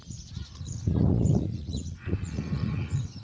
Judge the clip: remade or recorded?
remade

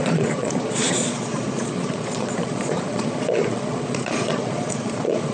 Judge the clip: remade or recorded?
remade